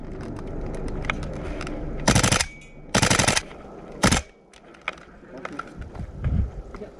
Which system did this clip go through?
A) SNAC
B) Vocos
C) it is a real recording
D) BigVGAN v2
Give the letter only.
C